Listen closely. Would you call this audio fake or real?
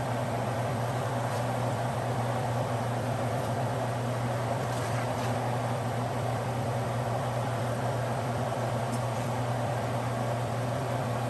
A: fake